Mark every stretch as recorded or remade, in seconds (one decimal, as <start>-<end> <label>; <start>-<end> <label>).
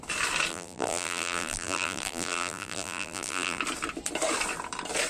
0.0-0.5 recorded; 0.5-3.6 remade; 3.6-5.1 recorded